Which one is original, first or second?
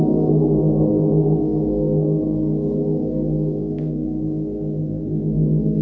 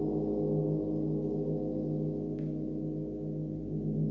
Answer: second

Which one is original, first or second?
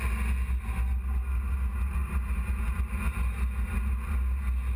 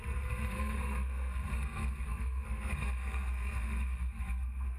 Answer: first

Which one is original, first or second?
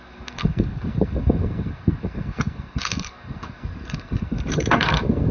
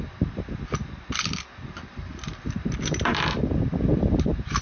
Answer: second